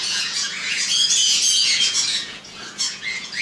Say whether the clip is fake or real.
fake